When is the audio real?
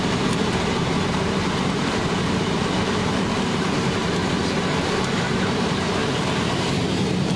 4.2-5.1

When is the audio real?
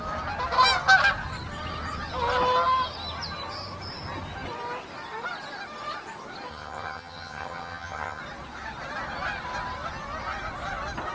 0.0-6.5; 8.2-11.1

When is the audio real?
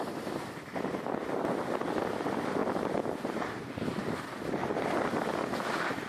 0.0-6.1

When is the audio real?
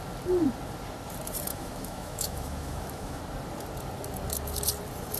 0.0-1.5; 3.2-5.2